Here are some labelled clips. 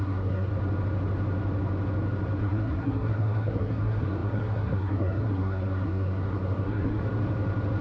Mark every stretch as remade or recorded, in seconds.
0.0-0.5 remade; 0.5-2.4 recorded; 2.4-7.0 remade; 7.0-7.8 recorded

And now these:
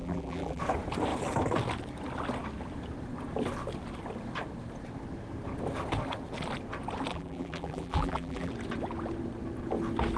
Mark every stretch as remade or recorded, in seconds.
0.0-0.6 remade; 0.6-7.1 recorded; 7.1-8.5 remade; 8.5-10.2 recorded

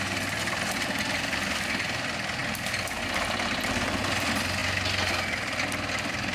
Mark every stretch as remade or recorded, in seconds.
0.0-6.3 recorded

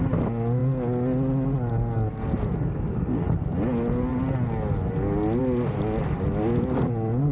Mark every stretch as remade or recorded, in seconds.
0.0-7.3 recorded

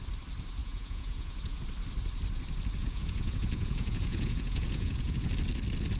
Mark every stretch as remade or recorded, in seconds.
0.0-0.6 recorded; 0.6-1.6 remade; 1.6-2.8 recorded; 2.8-5.3 remade; 5.3-6.0 recorded

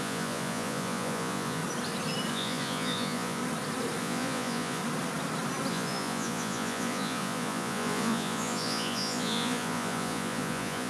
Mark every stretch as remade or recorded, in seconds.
0.0-1.6 remade; 1.6-2.3 recorded; 2.3-3.4 remade; 3.4-4.0 recorded; 4.0-4.8 remade; 4.8-5.7 recorded; 5.7-10.9 remade

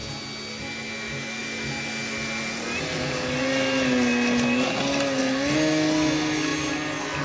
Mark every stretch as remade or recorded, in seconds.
0.0-7.2 recorded